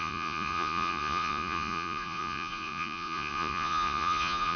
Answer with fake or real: fake